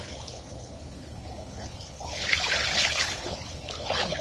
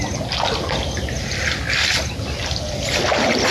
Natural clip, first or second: second